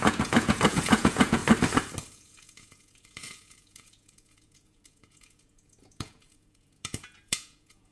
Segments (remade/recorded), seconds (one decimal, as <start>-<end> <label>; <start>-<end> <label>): 0.0-1.4 remade; 1.4-2.1 recorded; 2.1-7.9 remade